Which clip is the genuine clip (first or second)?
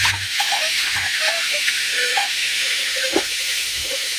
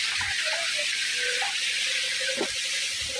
second